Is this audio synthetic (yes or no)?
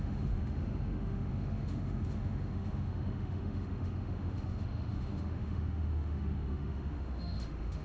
yes